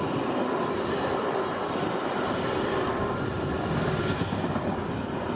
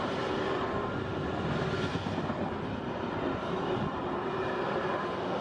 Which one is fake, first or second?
first